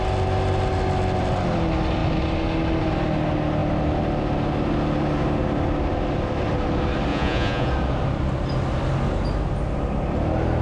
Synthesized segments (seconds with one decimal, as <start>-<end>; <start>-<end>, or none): 7.1-7.7